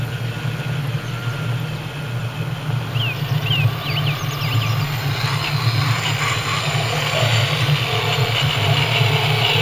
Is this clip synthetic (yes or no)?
no